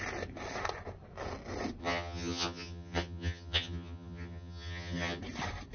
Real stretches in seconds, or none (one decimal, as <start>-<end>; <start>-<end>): 0.0-1.8; 5.2-5.7